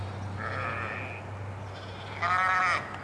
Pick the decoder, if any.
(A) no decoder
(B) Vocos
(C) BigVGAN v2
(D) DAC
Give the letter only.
A